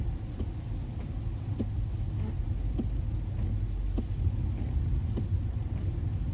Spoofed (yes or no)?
no